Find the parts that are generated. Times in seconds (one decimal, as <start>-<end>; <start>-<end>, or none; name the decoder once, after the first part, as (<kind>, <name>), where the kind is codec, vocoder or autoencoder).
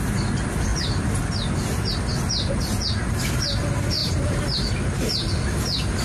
4.0-5.6 (vocoder, BigVGAN v2)